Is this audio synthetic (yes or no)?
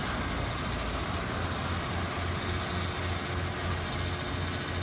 no